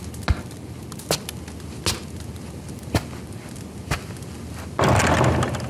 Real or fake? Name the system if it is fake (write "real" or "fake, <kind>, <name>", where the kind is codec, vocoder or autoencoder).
real